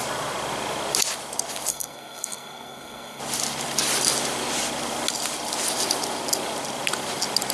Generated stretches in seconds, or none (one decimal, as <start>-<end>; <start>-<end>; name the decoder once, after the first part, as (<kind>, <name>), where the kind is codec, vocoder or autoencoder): 1.7-3.2 (codec, SNAC)